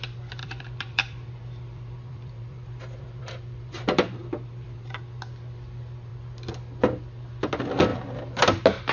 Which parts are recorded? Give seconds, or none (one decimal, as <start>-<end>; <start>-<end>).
0.0-0.4; 5.0-8.9